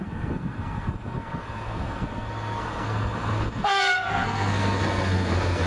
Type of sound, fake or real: fake